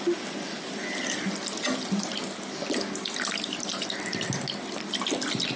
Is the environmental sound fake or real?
real